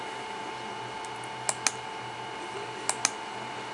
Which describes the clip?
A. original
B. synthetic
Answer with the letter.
A